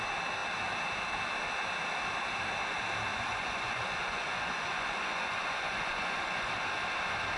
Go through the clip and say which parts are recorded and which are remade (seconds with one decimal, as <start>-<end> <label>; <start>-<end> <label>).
0.0-3.1 recorded; 3.1-6.5 remade; 6.5-7.4 recorded